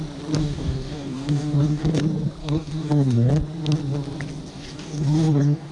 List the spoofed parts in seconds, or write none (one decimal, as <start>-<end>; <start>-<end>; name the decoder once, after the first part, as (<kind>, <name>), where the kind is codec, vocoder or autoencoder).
0.4-2.0 (codec, DAC); 2.4-3.3; 4.5-5.7